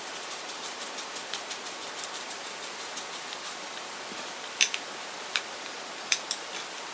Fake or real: real